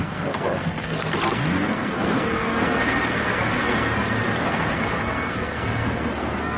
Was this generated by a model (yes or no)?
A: yes